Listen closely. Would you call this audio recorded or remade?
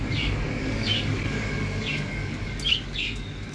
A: remade